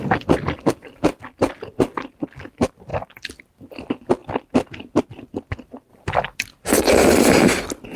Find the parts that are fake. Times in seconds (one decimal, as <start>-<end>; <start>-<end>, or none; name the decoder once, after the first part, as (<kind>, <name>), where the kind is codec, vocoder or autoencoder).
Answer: none